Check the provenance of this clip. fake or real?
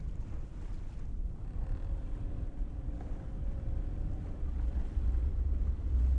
real